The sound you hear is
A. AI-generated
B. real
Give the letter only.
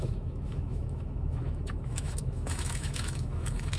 A